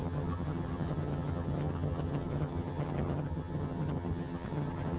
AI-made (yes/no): yes